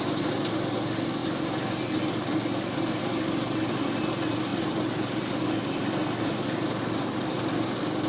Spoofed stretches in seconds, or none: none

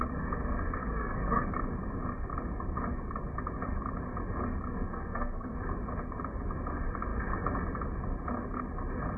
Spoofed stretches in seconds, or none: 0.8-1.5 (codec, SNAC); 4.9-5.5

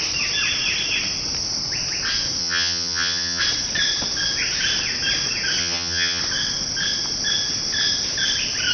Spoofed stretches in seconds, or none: 2.4-3.4 (vocoder, HiFi-GAN); 5.6-6.2